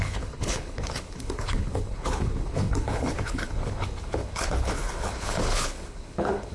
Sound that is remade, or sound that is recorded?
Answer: remade